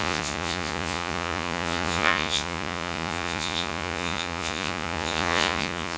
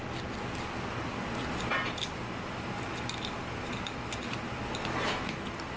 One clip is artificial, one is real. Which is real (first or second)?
second